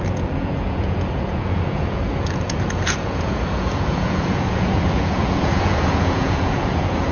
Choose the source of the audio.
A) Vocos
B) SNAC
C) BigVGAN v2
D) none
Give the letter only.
A